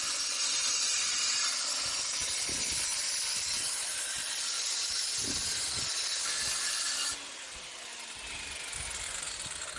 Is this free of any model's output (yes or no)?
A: yes